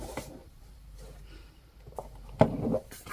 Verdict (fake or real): fake